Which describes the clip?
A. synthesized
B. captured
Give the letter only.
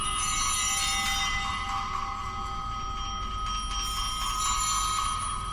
B